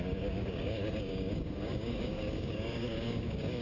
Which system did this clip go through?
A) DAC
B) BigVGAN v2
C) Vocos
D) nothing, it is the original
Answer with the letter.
A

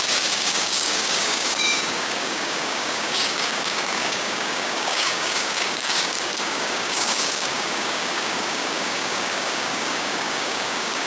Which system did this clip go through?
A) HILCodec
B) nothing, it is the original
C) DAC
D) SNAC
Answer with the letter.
C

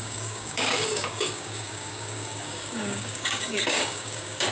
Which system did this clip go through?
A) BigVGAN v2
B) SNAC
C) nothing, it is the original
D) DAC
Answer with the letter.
D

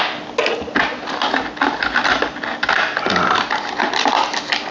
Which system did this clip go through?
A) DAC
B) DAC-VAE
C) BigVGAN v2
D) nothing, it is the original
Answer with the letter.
D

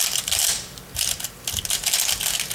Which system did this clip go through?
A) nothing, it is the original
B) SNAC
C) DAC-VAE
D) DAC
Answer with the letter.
A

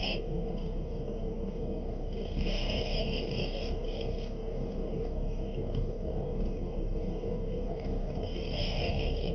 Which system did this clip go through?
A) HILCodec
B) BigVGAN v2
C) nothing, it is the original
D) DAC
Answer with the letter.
D